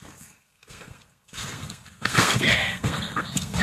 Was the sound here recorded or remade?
remade